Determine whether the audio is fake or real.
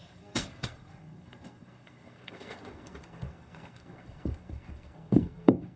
fake